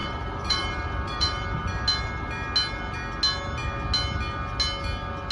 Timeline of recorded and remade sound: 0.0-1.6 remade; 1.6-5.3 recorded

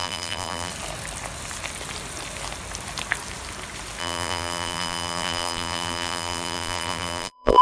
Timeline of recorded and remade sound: 0.0-0.7 remade; 0.7-4.0 recorded; 4.0-7.6 remade